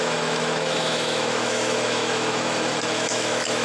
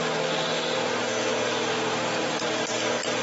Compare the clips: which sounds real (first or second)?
second